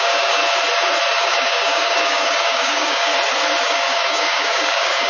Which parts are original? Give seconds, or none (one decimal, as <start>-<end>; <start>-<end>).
0.4-1.2; 3.1-3.6